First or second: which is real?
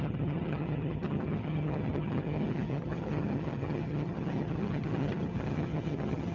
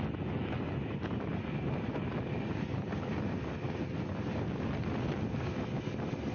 second